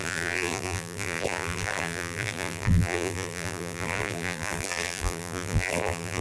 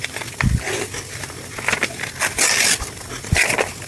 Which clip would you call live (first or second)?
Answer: second